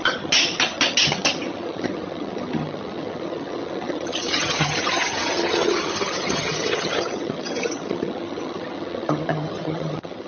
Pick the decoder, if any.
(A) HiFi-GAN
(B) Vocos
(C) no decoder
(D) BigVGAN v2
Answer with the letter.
A